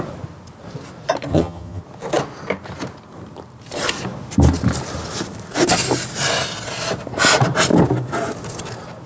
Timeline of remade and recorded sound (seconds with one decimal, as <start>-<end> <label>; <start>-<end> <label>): 0.0-1.3 recorded; 1.3-1.8 remade; 1.8-9.1 recorded